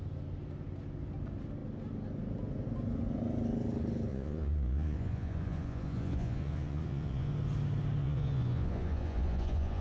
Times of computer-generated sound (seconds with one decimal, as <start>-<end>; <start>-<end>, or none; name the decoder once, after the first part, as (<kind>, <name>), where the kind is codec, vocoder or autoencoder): 4.1-7.3 (vocoder, Vocos); 8.0-9.8